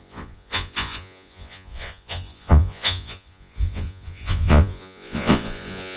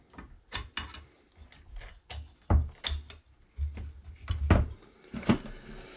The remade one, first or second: first